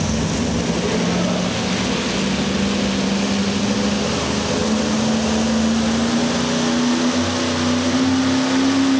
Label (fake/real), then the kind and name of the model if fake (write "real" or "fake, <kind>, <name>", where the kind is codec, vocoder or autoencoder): real